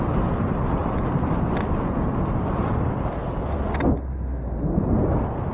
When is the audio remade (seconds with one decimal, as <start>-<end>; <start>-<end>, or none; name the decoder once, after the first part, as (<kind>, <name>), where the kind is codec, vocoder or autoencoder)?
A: 0.8-3.0 (vocoder, BigVGAN v2)